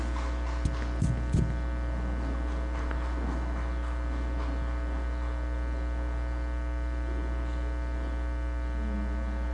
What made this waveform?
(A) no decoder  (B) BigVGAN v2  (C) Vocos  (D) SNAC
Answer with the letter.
A